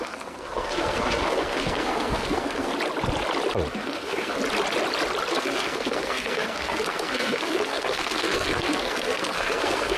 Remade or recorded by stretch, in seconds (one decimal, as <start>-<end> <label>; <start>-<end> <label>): 0.0-2.7 remade; 2.7-3.7 recorded; 3.7-4.4 remade; 4.4-5.3 recorded; 5.3-10.0 remade